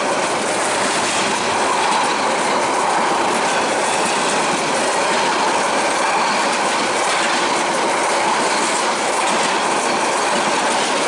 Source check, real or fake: real